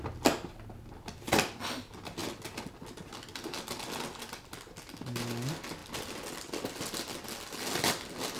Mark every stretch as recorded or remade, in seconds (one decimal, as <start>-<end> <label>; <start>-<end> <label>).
0.0-8.4 recorded